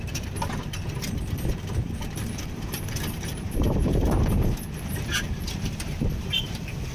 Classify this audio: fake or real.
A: fake